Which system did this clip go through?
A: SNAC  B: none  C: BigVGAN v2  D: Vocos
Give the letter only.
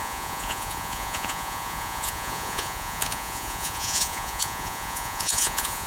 D